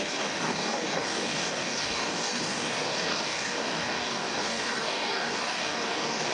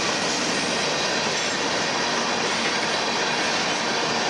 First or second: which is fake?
first